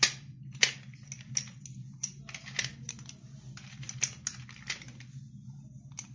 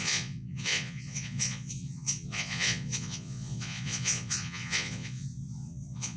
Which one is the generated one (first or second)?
second